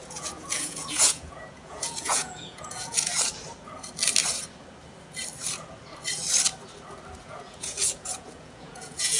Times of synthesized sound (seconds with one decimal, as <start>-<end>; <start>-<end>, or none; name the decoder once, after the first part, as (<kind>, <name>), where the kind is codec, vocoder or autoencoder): 0.0-3.1 (vocoder, Vocos); 7.2-9.2